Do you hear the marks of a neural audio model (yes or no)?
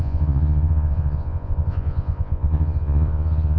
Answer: yes